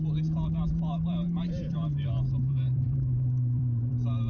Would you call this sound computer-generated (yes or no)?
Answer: yes